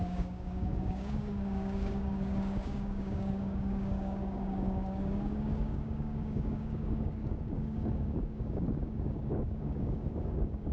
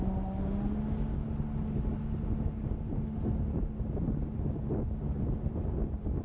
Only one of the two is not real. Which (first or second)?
first